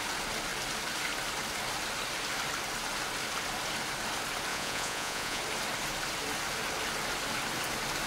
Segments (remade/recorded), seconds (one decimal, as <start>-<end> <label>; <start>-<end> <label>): 0.0-4.5 recorded; 4.5-5.4 remade; 5.4-8.1 recorded